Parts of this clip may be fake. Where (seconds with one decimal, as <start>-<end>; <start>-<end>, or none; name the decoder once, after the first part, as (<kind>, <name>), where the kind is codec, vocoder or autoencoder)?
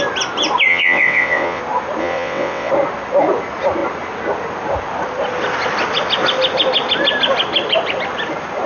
0.7-1.6 (vocoder, WaveNeXt); 2.0-2.7